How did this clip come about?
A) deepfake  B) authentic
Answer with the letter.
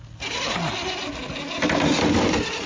B